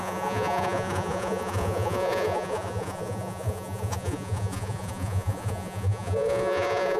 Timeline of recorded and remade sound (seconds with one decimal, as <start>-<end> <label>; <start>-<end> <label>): 0.0-7.0 remade